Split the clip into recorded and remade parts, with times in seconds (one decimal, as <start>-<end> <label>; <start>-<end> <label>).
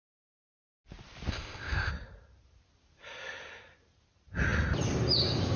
0.0-1.3 recorded; 1.3-1.9 remade; 1.9-5.6 recorded